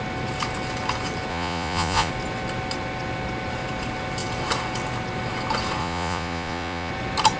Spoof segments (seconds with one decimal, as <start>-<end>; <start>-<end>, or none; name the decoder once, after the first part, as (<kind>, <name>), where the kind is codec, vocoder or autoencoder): 1.3-2.1 (vocoder, Vocos); 5.8-6.9